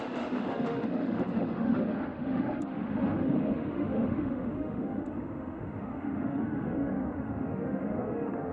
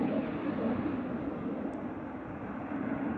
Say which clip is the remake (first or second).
first